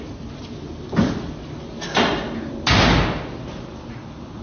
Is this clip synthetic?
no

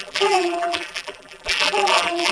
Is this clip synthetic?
yes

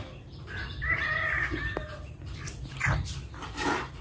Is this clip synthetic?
no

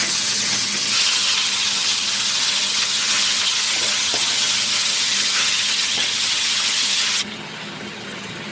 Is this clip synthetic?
yes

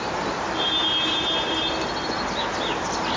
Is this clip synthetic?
no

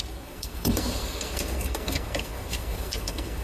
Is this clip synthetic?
yes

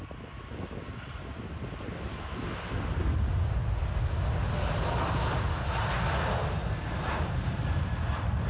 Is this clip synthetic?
no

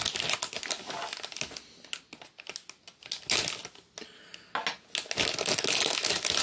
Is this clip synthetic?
no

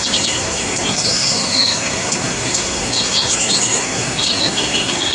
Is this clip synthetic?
yes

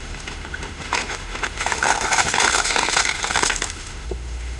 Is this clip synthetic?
yes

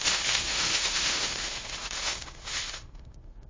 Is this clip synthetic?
yes